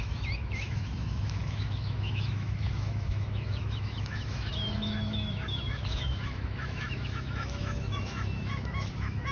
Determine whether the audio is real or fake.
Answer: fake